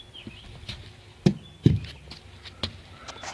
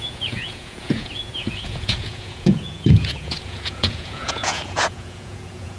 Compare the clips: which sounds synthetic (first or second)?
second